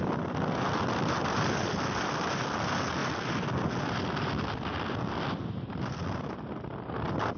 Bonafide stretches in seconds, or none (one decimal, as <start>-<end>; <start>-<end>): 3.0-5.8